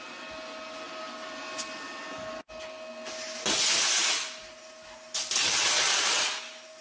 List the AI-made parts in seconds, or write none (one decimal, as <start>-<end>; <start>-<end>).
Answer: none